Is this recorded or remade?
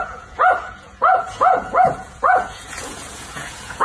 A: remade